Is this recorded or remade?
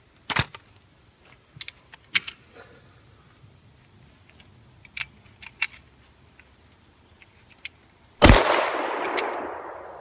recorded